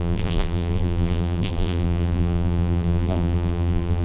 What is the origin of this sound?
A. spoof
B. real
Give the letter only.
A